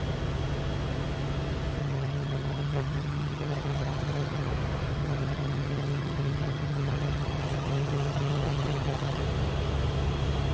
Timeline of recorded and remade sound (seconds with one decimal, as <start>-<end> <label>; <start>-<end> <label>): 0.0-1.8 recorded; 1.8-4.5 remade; 4.5-5.0 recorded; 5.0-9.2 remade; 9.2-10.5 recorded